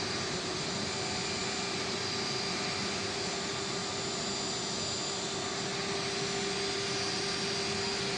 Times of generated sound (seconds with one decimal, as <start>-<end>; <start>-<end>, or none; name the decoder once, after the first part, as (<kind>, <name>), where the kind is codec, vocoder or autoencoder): none

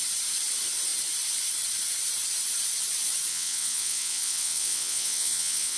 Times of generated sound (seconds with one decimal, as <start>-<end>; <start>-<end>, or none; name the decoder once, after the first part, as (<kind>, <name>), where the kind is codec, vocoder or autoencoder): 3.3-5.8 (vocoder, WaveNeXt)

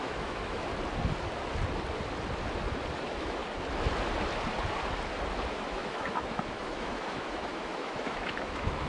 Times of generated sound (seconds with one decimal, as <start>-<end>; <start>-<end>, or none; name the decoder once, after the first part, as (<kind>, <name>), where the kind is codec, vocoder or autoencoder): 0.0-0.7 (autoencoder, DAC-VAE); 3.0-3.4; 5.5-8.9

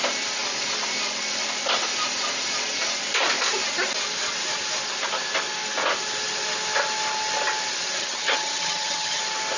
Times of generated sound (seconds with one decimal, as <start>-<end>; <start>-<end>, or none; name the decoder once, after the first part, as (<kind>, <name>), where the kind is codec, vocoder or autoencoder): 8.0-9.2 (vocoder, HiFi-GAN)

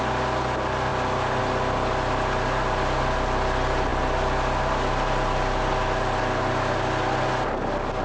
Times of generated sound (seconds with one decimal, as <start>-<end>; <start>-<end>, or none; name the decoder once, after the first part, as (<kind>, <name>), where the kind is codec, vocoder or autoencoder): none

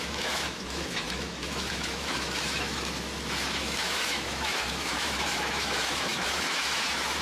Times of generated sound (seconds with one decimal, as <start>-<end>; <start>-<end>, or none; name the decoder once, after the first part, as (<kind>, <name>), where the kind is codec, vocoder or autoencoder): 0.0-7.2 (autoencoder, DAC-VAE)

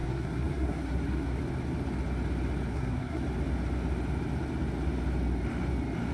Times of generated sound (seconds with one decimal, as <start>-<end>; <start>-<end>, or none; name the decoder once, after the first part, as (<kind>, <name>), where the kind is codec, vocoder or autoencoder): 0.0-1.4 (codec, SNAC); 2.7-3.2